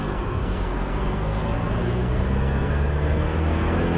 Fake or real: fake